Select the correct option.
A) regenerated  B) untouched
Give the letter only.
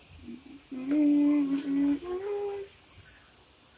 B